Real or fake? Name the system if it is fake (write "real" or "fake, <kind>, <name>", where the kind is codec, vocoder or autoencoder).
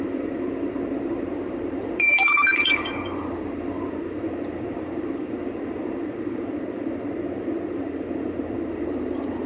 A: fake, vocoder, BigVGAN v2